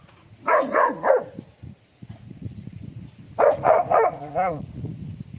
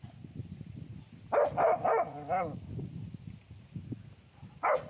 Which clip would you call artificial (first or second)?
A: first